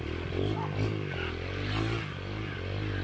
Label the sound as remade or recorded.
recorded